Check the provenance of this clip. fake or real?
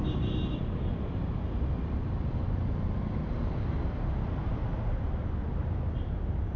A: real